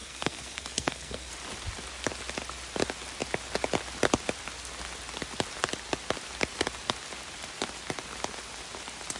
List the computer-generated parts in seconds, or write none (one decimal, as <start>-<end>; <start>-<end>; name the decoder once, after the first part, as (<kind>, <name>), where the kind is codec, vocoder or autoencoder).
0.0-1.3 (codec, SNAC)